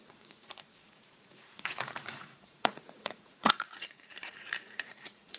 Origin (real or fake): fake